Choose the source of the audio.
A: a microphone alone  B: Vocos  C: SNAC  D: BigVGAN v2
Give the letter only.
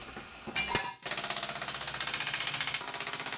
A